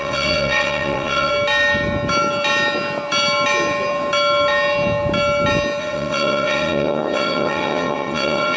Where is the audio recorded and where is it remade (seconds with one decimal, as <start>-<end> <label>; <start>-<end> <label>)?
0.0-1.3 remade; 1.3-5.8 recorded; 5.8-8.6 remade